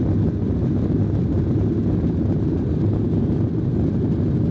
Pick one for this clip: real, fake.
real